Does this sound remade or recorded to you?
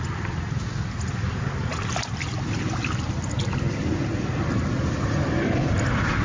recorded